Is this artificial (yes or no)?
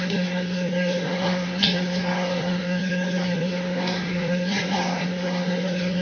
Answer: yes